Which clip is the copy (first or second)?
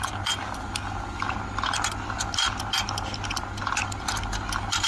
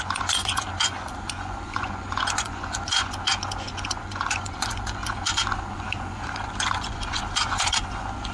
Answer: second